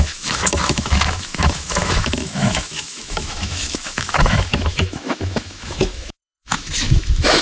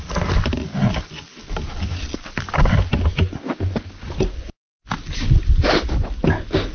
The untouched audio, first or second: second